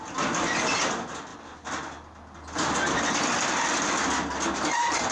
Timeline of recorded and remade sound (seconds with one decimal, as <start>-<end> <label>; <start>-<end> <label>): 0.0-5.1 recorded